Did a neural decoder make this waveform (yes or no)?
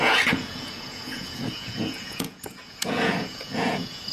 yes